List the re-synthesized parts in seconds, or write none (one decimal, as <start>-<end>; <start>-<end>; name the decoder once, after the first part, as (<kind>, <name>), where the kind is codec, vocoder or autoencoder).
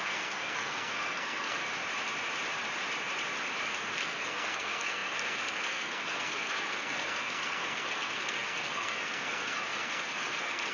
0.0-1.6 (codec, SNAC); 3.6-10.7